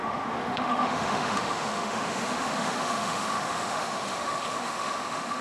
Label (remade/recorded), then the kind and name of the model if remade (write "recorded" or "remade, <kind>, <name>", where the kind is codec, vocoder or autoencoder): remade, autoencoder, DAC-VAE